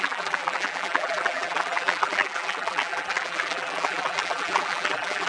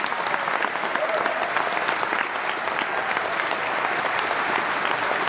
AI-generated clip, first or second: first